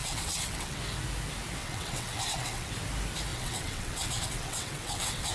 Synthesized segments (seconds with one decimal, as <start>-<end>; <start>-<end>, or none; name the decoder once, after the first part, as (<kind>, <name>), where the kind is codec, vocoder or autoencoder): 0.0-0.8 (vocoder, WaveNeXt); 1.6-2.7; 3.3-5.3